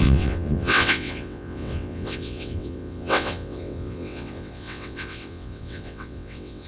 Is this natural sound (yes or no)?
no